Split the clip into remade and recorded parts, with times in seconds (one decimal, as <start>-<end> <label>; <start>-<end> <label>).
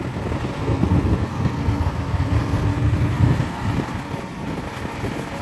0.0-0.6 recorded; 0.6-3.7 remade; 3.7-5.4 recorded